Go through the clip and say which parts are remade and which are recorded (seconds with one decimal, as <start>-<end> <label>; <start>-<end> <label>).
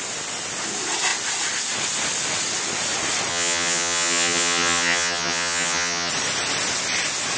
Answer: 0.0-3.3 recorded; 3.3-6.1 remade; 6.1-7.4 recorded